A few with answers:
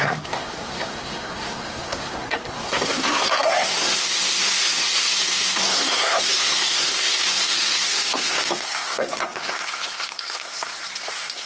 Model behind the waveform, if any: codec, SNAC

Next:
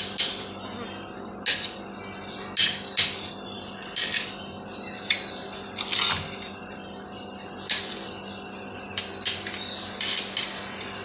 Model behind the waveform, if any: none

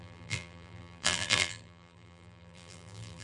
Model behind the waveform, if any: vocoder, BigVGAN v2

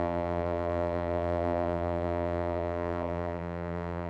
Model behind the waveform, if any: vocoder, BigVGAN v2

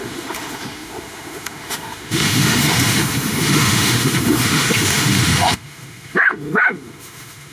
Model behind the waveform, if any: autoencoder, DAC-VAE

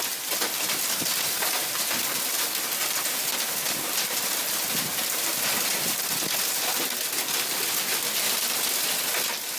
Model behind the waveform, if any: none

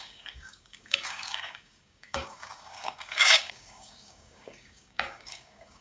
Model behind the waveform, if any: codec, DAC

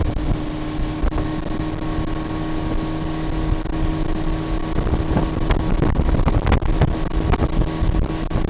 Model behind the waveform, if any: none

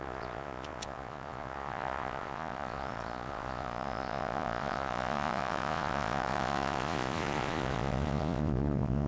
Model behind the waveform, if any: vocoder, Vocos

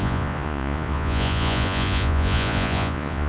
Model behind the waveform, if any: vocoder, Vocos